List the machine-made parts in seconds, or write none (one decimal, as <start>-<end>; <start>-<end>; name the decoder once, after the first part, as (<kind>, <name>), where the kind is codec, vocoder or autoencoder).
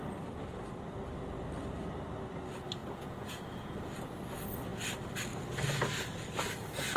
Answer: 2.8-3.9 (vocoder, Vocos)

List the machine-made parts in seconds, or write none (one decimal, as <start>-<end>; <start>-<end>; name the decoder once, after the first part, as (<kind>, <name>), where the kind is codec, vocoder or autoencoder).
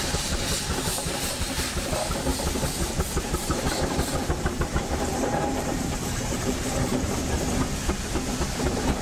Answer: 0.9-1.9 (vocoder, BigVGAN v2); 2.3-7.1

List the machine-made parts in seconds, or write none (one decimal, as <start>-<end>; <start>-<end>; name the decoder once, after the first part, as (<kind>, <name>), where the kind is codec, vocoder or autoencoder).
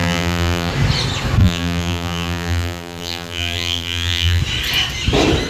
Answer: 0.0-0.7 (vocoder, BigVGAN v2); 1.4-4.4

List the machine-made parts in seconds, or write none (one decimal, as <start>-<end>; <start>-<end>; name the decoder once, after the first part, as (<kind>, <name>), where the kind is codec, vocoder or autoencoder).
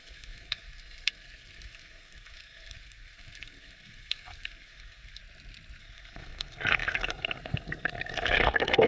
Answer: 0.0-5.2 (codec, SNAC); 5.8-8.9